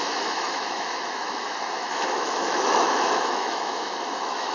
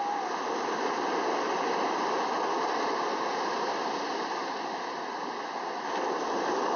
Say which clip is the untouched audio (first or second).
second